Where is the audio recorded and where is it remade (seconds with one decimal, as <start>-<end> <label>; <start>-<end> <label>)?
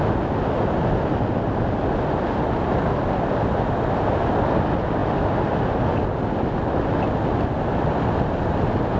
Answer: 0.0-9.0 recorded